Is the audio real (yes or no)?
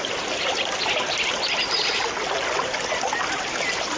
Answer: yes